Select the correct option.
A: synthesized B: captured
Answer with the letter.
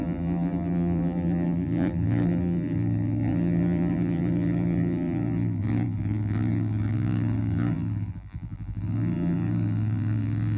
A